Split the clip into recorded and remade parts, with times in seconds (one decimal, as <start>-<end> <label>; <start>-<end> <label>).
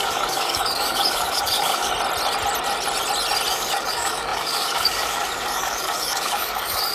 0.0-1.9 remade; 1.9-3.5 recorded; 3.5-6.9 remade